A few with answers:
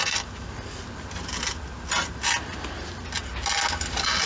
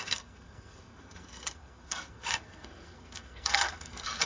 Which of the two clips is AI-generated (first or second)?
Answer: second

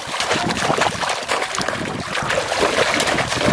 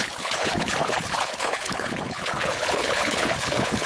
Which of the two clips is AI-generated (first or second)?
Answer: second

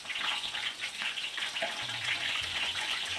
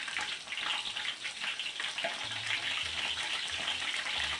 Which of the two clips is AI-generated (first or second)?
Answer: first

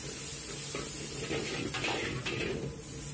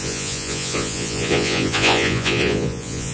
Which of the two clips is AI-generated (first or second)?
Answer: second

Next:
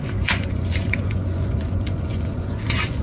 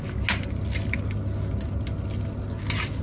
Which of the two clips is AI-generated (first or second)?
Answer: first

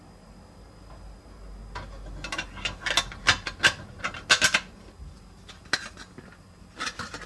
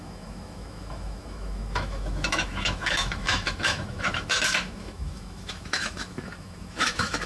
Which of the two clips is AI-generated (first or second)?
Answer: second